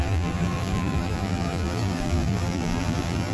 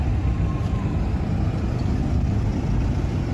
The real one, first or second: second